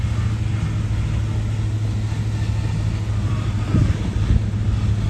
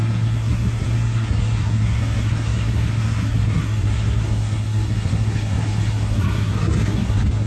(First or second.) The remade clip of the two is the second